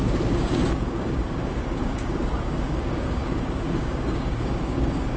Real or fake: fake